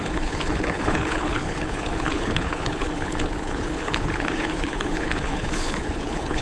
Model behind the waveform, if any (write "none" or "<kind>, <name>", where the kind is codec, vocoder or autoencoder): codec, HILCodec